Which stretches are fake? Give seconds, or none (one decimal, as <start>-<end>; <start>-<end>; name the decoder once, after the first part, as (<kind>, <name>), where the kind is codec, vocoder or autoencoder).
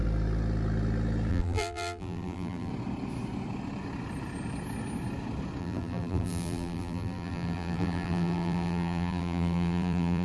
1.3-2.7 (vocoder, BigVGAN v2); 5.6-10.2